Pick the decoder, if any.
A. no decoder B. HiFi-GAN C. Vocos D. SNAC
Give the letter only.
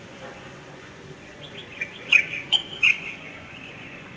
C